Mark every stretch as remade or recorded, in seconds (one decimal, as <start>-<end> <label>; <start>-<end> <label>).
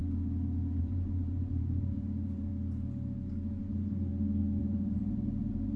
0.0-0.8 recorded; 0.8-2.5 remade; 2.5-3.5 recorded; 3.5-4.1 remade; 4.1-4.6 recorded; 4.6-5.8 remade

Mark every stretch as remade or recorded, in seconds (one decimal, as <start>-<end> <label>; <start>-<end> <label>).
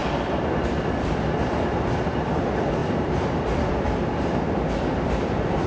0.0-2.4 remade; 2.4-2.8 recorded; 2.8-3.7 remade; 3.7-5.7 recorded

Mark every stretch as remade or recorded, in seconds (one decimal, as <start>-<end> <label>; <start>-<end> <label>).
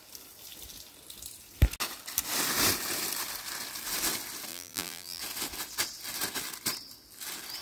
0.0-4.5 recorded; 4.5-5.2 remade; 5.2-7.6 recorded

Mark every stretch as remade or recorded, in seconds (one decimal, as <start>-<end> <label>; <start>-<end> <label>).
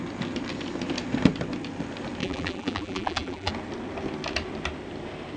0.0-2.2 recorded; 2.2-3.5 remade; 3.5-5.4 recorded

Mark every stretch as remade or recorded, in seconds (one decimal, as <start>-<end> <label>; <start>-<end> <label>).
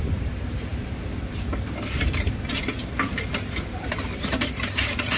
0.0-5.2 remade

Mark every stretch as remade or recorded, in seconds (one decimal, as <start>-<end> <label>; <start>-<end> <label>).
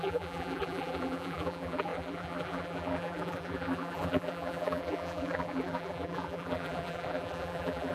0.0-7.9 remade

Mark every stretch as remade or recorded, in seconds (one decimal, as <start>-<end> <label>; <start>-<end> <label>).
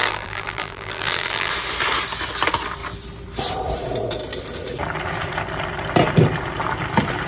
0.0-1.5 remade; 1.5-7.3 recorded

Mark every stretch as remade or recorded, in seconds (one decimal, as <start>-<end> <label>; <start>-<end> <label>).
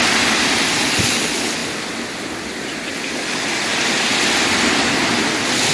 0.0-1.6 recorded; 1.6-2.7 remade; 2.7-3.7 recorded; 3.7-5.2 remade; 5.2-5.7 recorded